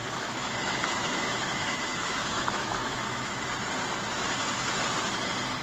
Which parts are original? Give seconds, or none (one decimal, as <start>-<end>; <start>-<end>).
3.4-5.6